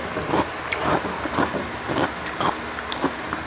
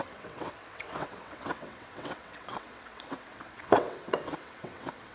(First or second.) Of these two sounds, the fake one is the second